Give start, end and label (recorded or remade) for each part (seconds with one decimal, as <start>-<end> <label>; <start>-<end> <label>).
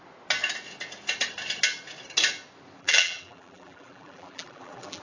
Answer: 0.0-2.8 recorded; 2.8-5.0 remade